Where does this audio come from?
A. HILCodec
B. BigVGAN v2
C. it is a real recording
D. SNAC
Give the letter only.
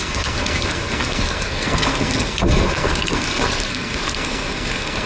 D